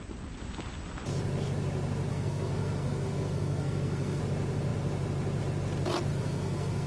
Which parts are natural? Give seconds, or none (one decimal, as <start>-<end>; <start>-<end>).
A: 0.0-2.1; 4.2-6.1